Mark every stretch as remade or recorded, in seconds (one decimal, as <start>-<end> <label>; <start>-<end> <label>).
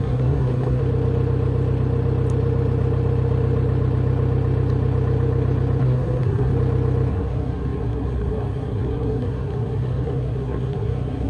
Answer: 0.0-0.8 remade; 0.8-5.8 recorded; 5.8-6.5 remade; 6.5-7.1 recorded; 7.1-11.3 remade